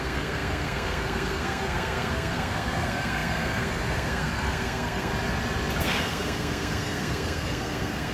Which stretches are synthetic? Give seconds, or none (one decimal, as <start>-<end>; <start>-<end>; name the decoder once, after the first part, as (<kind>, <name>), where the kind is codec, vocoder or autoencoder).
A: 0.0-5.1 (codec, SNAC); 5.8-8.1